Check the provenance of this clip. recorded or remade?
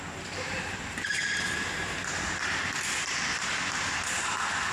recorded